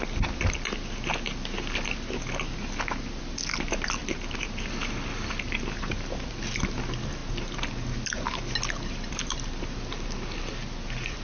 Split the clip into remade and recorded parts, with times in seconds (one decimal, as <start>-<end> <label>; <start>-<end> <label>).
0.0-4.0 recorded; 4.0-4.7 remade; 4.7-11.2 recorded